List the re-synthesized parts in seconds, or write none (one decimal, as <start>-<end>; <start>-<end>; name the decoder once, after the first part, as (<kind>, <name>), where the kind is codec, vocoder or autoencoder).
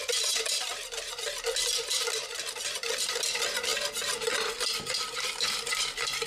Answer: none